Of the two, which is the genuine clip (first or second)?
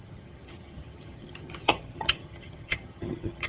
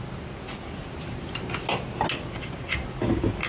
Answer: second